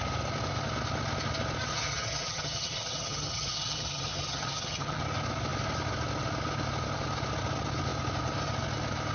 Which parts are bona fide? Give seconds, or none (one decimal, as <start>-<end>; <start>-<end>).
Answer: 0.0-1.7; 5.0-9.1